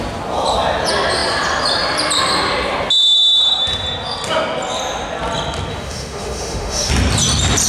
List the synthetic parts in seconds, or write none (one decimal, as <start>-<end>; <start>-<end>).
5.7-6.9